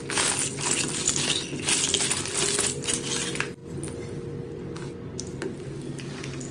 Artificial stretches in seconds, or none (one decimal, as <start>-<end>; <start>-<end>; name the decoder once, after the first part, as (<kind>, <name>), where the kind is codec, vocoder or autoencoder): none